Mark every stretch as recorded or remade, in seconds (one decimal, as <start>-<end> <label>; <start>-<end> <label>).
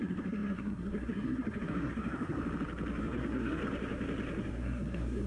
0.0-2.4 remade; 2.4-3.0 recorded; 3.0-3.6 remade; 3.6-4.4 recorded; 4.4-5.3 remade